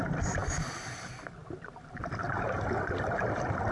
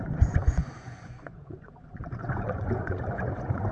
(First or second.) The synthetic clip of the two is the second